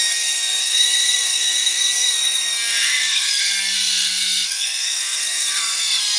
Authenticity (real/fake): fake